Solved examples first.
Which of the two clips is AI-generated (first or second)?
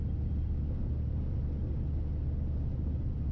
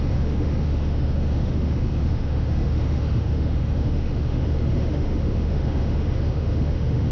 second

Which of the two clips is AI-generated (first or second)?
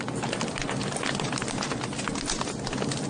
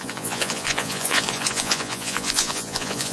second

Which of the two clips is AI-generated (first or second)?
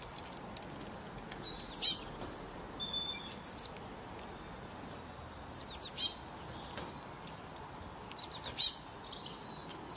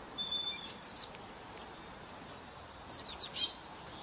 second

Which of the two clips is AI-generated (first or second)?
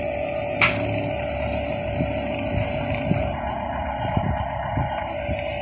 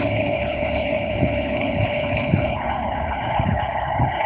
second